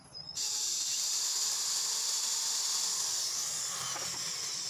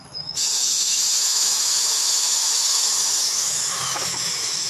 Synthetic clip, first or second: second